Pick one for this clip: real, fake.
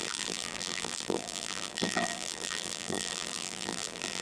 fake